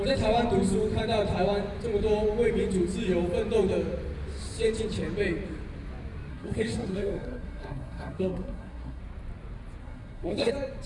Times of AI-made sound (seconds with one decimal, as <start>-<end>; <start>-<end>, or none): 6.3-9.0; 9.8-10.5